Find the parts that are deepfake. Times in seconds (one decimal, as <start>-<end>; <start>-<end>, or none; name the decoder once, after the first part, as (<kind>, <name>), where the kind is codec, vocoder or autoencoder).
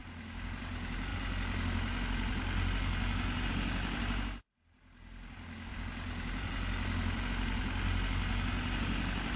5.7-7.2 (vocoder, BigVGAN v2)